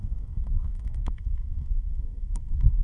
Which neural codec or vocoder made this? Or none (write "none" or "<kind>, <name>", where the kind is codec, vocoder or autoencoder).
codec, SNAC